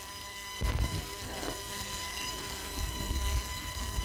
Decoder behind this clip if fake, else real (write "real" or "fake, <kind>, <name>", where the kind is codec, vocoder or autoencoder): fake, codec, SNAC